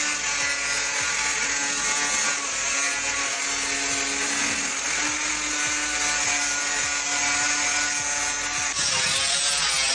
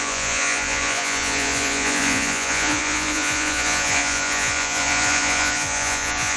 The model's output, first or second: second